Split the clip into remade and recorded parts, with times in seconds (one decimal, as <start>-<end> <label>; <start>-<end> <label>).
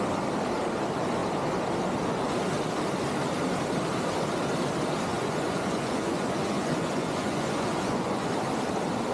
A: 0.0-5.1 recorded; 5.1-8.3 remade; 8.3-9.1 recorded